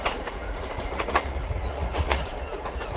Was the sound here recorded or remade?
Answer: remade